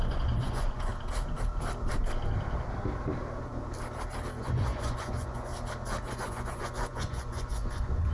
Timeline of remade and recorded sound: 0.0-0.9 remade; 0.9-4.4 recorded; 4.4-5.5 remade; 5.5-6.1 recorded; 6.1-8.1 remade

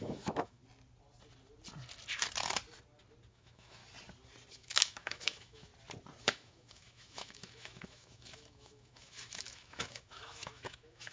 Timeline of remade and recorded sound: 0.0-0.6 remade; 0.6-3.3 recorded; 3.3-3.8 remade; 3.8-4.5 recorded; 4.5-5.7 remade; 5.7-6.2 recorded; 6.2-11.1 remade